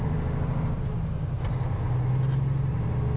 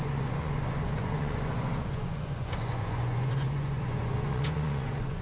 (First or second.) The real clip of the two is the first